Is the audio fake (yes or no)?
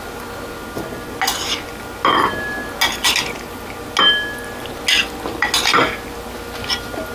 no